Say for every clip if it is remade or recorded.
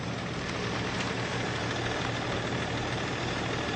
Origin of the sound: remade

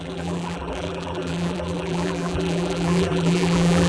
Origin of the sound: remade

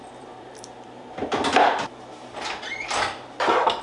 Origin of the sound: remade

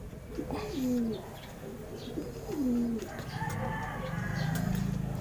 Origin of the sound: recorded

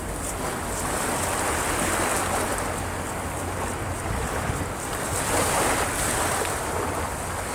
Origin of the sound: recorded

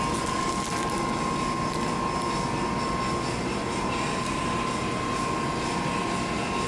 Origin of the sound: recorded